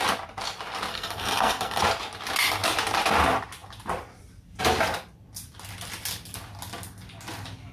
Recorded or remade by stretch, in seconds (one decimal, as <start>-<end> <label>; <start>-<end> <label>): 0.0-0.9 recorded; 0.9-1.8 remade; 1.8-7.7 recorded